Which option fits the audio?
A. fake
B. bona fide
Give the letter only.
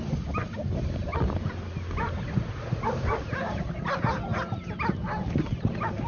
B